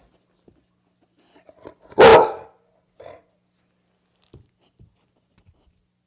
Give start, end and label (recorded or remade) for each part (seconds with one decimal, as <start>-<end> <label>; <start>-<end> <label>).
0.0-6.1 recorded